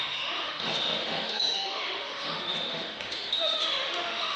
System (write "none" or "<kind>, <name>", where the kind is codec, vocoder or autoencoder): autoencoder, DAC-VAE